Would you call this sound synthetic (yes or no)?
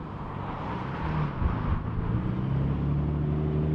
no